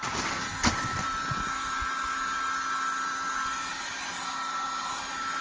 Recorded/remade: recorded